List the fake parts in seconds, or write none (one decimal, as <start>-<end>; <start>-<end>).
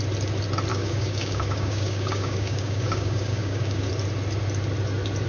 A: 0.7-3.9